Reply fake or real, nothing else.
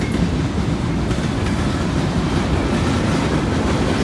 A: real